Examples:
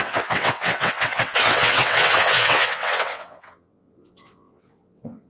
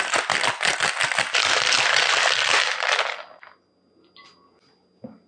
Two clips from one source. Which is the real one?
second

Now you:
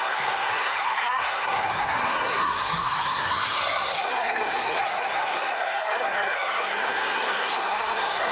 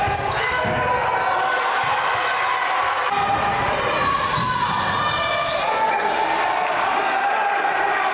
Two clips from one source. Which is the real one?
second